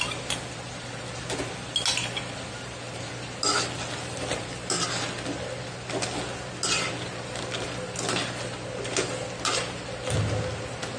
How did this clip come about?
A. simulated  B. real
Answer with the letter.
B